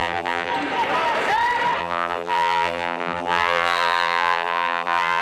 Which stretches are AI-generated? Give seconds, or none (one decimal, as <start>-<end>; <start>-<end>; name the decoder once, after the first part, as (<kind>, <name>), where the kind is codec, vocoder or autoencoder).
0.0-0.5 (vocoder, BigVGAN v2); 1.8-5.2